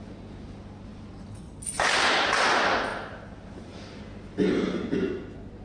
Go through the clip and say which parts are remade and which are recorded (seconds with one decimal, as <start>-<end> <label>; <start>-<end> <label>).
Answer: 0.0-2.9 recorded; 2.9-4.0 remade; 4.0-5.6 recorded